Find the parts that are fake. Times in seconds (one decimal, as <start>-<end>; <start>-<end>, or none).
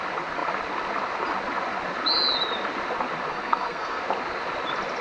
3.3-4.0